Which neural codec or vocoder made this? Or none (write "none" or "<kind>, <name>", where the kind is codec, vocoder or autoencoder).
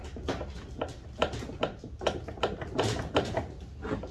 none